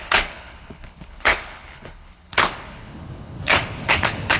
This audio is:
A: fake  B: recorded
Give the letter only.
A